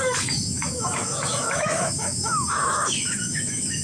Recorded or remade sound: remade